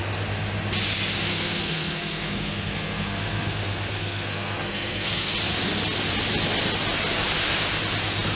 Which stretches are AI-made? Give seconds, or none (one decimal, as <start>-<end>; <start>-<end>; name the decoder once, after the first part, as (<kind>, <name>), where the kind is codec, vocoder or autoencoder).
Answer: 1.3-5.3 (codec, SNAC)